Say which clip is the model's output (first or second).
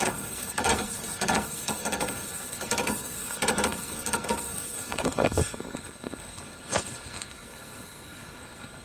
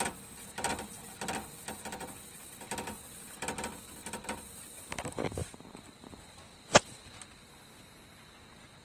first